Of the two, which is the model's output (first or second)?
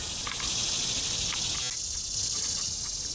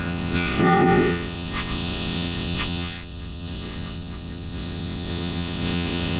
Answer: second